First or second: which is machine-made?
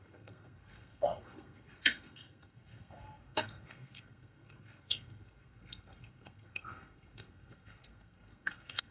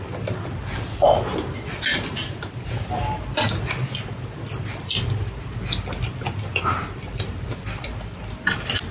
first